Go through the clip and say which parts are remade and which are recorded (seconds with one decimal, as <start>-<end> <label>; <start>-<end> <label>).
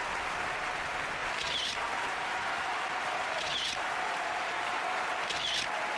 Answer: 0.0-1.2 recorded; 1.2-4.8 remade; 4.8-6.0 recorded